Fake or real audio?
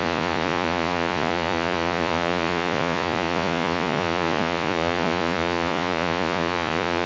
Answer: fake